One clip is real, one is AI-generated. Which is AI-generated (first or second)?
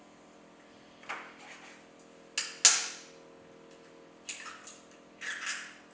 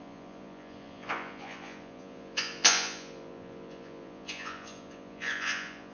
second